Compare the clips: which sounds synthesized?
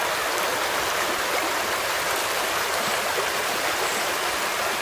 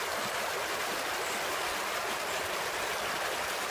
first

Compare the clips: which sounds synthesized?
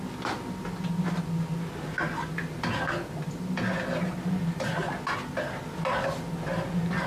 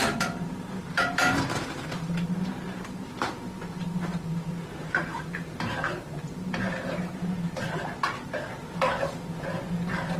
second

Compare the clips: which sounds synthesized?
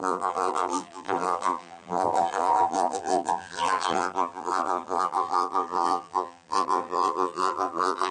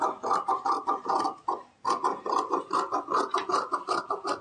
first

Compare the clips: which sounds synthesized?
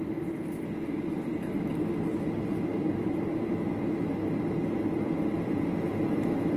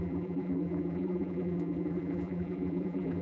second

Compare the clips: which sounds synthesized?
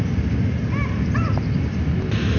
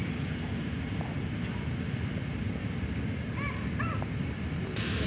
second